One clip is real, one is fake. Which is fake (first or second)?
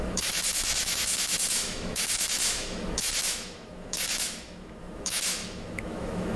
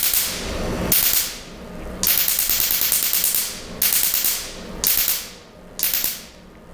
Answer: first